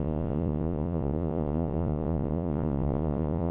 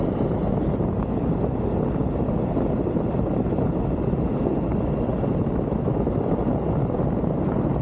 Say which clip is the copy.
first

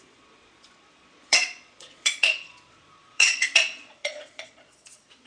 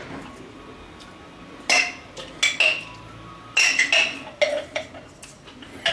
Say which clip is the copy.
first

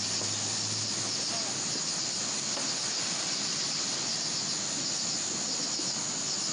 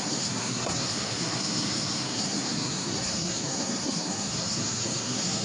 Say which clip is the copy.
second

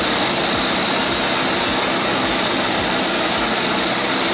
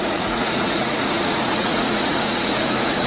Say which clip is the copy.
second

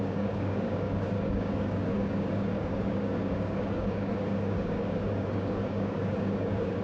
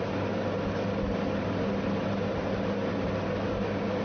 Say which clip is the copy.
first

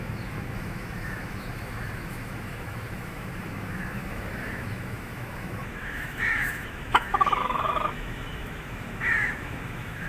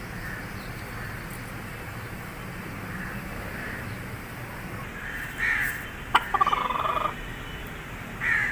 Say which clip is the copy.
first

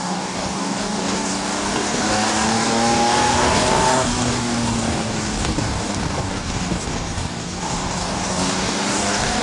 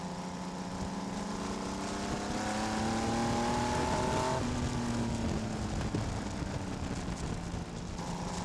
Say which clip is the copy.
first